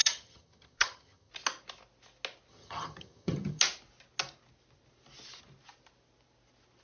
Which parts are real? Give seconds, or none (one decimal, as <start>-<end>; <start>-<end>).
1.3-2.5; 3.6-6.8